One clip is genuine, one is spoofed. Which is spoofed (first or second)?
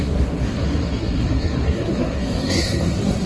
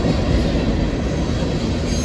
first